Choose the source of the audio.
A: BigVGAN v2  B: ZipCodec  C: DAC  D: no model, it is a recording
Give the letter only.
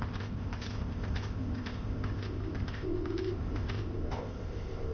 B